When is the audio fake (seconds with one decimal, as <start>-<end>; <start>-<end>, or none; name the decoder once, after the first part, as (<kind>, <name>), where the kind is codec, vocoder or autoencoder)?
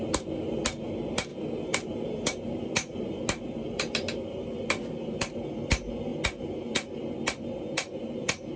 none